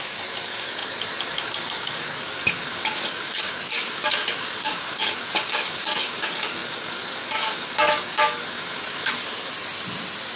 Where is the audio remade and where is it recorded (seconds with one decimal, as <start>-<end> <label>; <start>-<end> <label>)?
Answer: 0.0-9.5 remade; 9.5-10.4 recorded